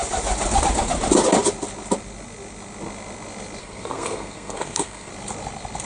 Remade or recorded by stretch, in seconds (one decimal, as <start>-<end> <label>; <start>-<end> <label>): 0.0-3.6 recorded; 3.6-5.1 remade; 5.1-5.8 recorded